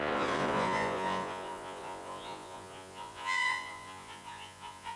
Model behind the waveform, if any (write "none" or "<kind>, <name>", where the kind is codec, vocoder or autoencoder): vocoder, Vocos